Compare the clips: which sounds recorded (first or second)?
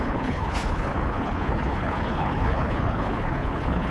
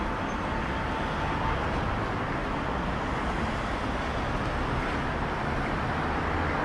second